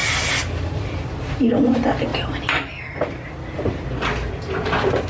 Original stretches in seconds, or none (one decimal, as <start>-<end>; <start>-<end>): 0.0-5.1